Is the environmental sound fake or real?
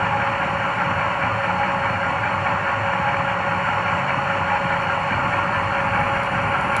real